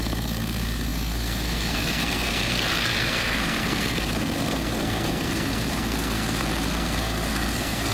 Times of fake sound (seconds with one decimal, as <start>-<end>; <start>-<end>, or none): 0.0-7.9